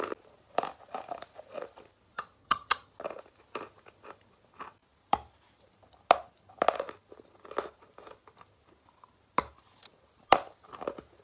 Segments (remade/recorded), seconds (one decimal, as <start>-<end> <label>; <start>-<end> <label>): 0.0-2.4 recorded; 2.4-2.9 remade; 2.9-11.2 recorded